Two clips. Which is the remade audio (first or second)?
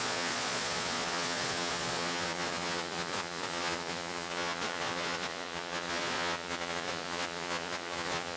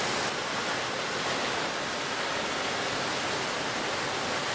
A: first